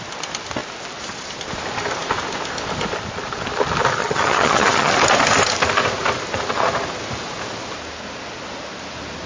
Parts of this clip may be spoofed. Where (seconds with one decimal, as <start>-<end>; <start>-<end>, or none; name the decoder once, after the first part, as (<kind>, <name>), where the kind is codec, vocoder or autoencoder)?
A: 4.0-4.9 (vocoder, HiFi-GAN)